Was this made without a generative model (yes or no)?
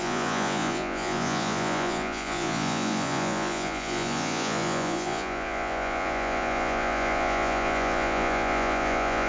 no